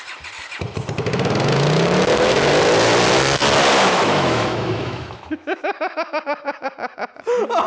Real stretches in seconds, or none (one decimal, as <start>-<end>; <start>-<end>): 0.0-3.9; 6.2-7.7